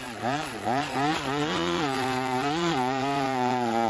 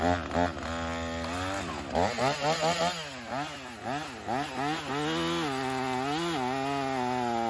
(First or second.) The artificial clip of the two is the first